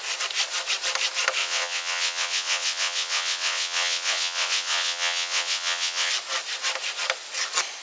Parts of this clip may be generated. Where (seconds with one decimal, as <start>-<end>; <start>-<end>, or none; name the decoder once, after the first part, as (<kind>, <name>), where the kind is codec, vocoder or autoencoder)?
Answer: 1.4-6.1 (vocoder, WaveNeXt)